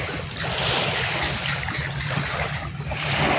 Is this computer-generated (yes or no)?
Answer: no